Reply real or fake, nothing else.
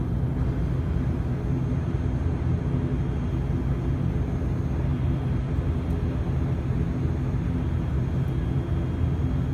real